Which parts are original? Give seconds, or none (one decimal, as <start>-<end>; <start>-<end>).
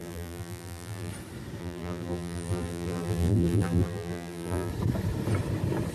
1.1-1.6; 4.7-5.9